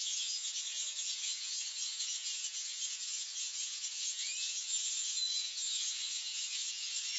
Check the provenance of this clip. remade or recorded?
remade